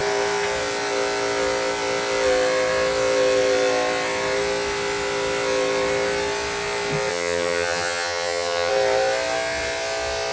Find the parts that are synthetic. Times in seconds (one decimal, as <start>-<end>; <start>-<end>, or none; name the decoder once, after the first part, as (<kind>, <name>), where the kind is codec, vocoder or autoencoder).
7.1-8.7 (vocoder, HiFi-GAN)